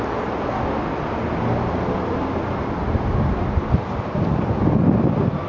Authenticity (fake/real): real